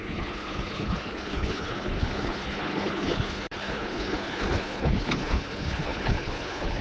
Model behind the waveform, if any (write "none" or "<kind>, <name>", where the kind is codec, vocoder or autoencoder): codec, HILCodec